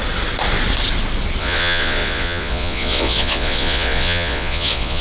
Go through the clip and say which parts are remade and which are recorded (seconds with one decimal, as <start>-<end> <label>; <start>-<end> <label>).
0.0-1.4 recorded; 1.4-5.0 remade